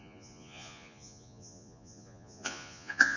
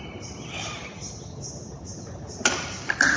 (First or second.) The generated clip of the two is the first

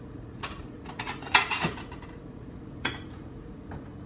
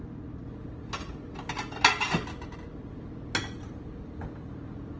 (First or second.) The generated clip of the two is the first